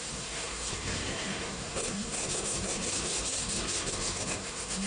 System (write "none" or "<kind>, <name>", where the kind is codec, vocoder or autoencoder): codec, SNAC